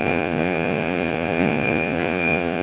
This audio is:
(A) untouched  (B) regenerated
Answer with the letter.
B